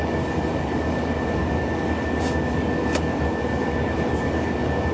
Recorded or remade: remade